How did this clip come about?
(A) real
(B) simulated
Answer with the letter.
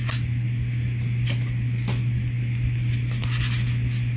A